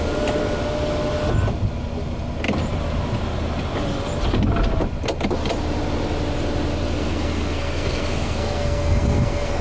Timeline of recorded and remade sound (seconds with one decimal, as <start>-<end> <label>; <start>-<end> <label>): 0.0-7.0 recorded; 7.0-9.6 remade